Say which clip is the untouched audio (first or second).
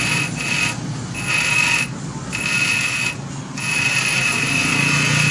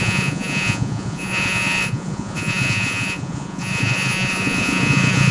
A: first